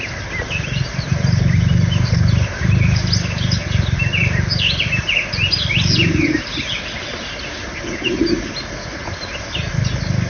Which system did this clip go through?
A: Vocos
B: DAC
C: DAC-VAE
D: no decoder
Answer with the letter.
D